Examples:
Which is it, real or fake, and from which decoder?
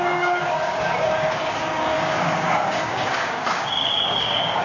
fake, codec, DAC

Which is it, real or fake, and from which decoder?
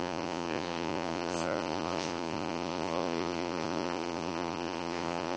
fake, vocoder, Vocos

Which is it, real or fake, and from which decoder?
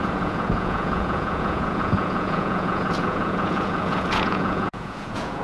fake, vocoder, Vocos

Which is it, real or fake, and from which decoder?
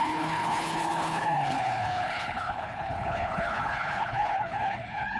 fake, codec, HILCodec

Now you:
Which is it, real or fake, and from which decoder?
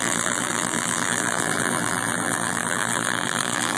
fake, vocoder, BigVGAN v2